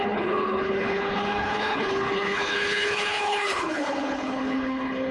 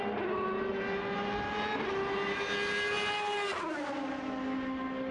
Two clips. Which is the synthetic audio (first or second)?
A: first